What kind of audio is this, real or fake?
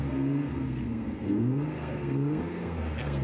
fake